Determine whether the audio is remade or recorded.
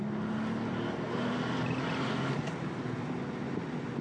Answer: recorded